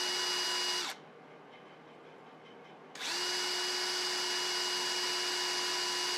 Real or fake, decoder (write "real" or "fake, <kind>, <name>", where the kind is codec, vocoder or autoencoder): real